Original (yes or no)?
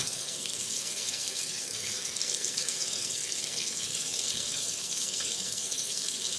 no